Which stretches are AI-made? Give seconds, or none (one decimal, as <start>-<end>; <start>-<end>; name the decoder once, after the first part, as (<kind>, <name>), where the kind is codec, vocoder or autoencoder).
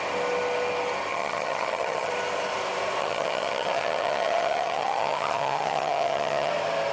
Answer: 1.1-2.1 (vocoder, HiFi-GAN); 3.0-6.5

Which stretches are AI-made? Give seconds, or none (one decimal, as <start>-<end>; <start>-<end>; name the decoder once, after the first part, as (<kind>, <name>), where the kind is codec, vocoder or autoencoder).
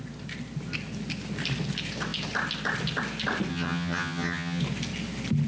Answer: 3.5-4.6 (vocoder, HiFi-GAN)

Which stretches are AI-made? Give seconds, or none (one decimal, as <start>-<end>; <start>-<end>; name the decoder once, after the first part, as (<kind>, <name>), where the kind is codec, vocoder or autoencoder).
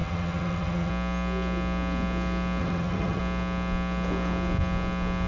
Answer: 0.0-0.9 (vocoder, HiFi-GAN); 2.6-3.2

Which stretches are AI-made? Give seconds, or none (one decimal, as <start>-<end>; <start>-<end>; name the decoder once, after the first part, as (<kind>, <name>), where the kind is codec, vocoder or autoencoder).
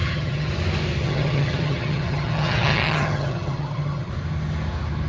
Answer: 0.0-0.5 (vocoder, HiFi-GAN); 1.0-4.1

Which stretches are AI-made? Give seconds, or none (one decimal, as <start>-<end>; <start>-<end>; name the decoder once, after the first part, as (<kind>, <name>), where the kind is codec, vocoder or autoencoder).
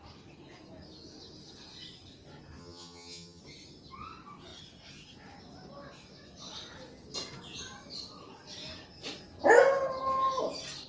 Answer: 2.6-3.4 (vocoder, HiFi-GAN)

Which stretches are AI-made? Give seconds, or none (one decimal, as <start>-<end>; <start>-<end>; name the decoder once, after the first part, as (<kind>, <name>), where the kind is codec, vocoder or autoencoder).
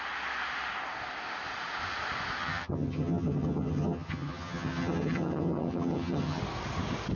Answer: 2.4-6.4 (vocoder, HiFi-GAN)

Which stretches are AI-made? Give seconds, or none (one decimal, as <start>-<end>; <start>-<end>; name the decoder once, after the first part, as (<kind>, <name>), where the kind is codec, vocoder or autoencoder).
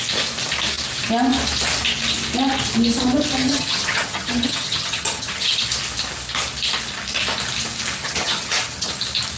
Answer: 3.4-5.6 (vocoder, HiFi-GAN); 8.0-8.9